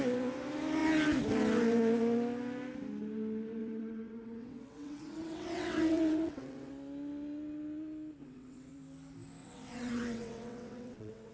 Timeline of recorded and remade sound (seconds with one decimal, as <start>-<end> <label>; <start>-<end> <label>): 0.0-3.6 recorded; 3.6-6.7 remade; 6.7-8.2 recorded; 8.2-8.7 remade; 8.7-9.4 recorded; 9.4-11.3 remade